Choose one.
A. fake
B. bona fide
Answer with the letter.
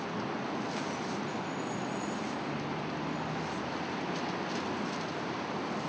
B